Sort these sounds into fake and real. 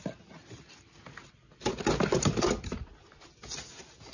real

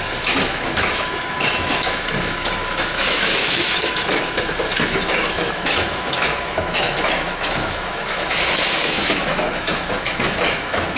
fake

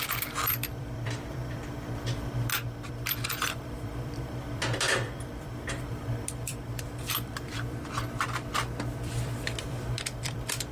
fake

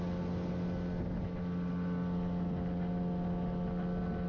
real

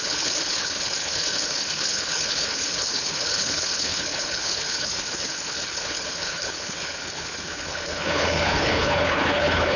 fake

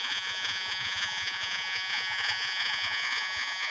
fake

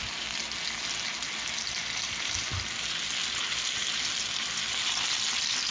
real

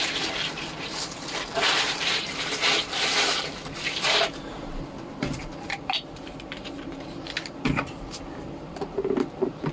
fake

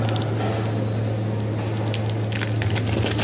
real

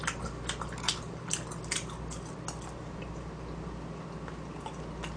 real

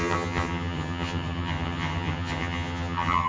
fake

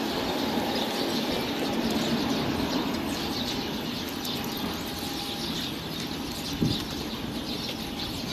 real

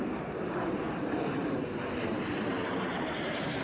fake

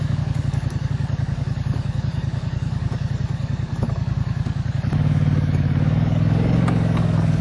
fake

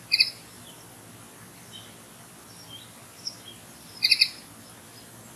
real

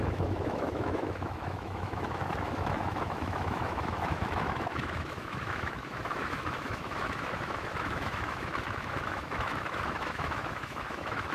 fake